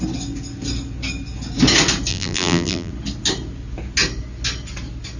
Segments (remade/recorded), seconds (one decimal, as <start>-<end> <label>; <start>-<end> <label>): 0.0-2.1 recorded; 2.1-2.9 remade; 2.9-5.2 recorded